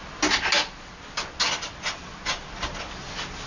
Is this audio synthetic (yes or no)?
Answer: no